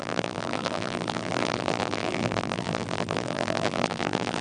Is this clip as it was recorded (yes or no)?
no